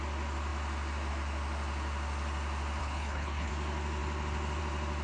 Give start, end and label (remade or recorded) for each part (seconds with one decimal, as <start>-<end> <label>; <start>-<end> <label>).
0.0-2.8 recorded; 2.8-3.5 remade; 3.5-5.0 recorded